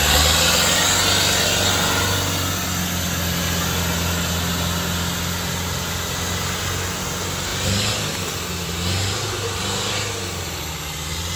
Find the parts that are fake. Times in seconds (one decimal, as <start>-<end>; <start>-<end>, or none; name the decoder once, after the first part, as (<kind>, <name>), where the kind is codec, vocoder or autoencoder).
none